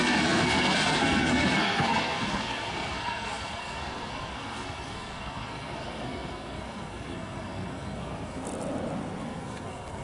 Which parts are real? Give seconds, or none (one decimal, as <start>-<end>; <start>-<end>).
8.4-9.2